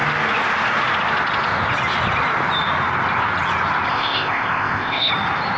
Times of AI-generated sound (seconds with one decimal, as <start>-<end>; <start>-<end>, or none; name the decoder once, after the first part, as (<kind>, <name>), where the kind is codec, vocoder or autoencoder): 3.9-5.1 (codec, ZipCodec)